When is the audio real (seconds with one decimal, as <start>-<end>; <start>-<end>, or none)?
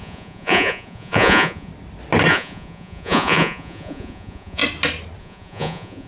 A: 1.7-2.3; 4.6-5.2